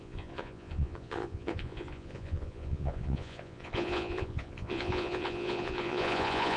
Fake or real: fake